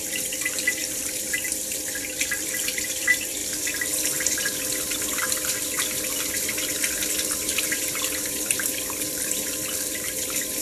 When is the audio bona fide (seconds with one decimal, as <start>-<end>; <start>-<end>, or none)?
3.4-6.3